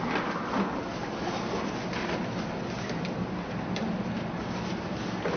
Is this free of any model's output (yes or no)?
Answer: yes